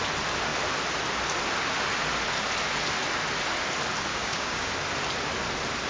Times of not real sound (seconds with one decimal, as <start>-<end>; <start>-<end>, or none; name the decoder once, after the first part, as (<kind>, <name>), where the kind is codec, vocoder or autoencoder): 4.1-4.7 (codec, DAC)